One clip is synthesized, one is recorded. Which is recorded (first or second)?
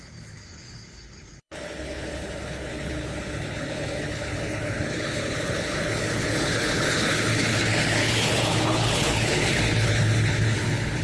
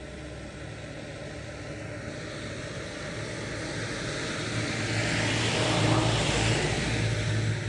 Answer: second